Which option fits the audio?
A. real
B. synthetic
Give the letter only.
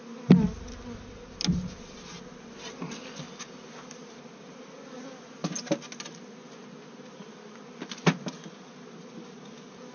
A